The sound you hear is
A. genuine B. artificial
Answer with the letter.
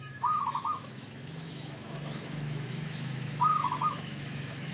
B